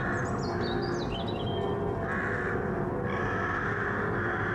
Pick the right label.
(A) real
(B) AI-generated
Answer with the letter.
A